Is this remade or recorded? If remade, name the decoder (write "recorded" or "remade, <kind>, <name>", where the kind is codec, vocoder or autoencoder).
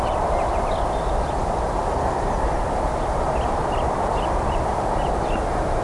remade, vocoder, BigVGAN v2